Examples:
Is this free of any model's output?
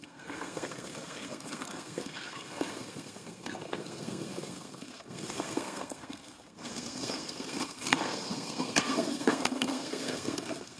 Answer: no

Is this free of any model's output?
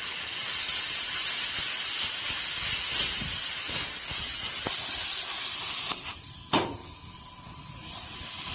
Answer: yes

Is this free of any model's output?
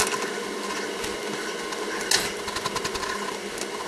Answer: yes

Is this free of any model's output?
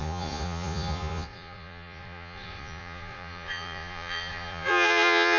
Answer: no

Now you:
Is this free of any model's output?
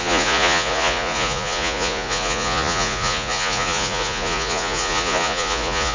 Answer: no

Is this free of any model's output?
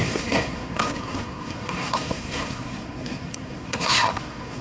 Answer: no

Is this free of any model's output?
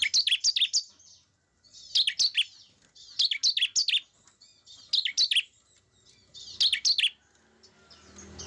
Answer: yes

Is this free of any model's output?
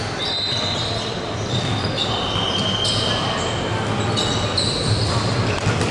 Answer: yes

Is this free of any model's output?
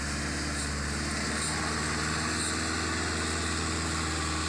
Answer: yes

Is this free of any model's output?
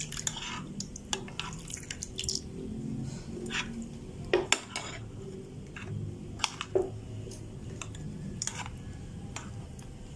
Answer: yes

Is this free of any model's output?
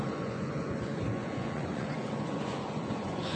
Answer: no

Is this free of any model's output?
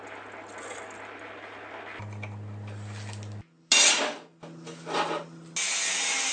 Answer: yes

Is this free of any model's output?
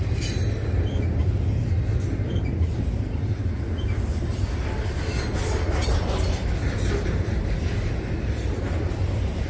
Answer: yes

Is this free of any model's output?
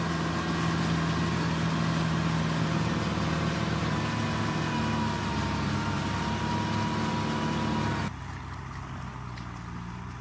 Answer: yes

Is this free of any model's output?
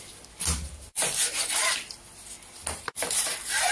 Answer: yes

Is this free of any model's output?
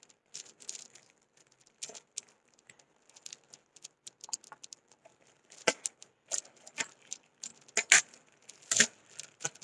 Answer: yes